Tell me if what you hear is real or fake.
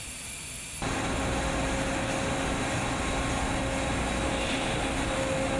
real